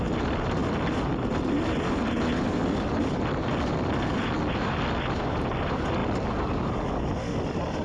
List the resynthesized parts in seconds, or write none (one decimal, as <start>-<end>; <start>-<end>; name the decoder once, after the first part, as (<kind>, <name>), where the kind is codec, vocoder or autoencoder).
none